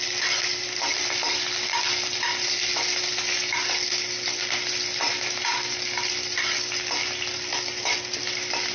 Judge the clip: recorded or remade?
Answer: recorded